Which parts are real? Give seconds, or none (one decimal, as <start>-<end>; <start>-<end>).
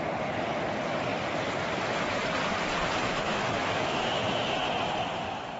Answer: 0.0-3.0; 4.6-5.6